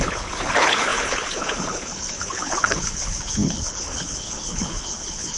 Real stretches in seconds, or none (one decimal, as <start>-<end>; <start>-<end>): none